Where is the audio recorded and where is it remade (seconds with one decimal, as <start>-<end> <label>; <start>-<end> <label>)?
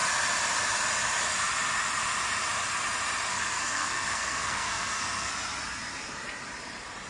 0.0-3.3 recorded; 3.3-5.3 remade; 5.3-7.1 recorded